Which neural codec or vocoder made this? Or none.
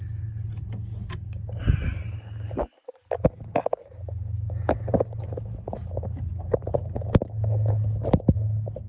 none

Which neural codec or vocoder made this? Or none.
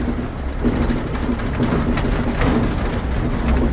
none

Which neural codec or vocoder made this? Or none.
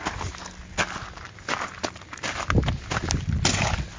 none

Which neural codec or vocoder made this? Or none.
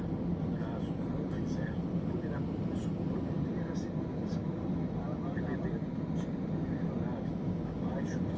none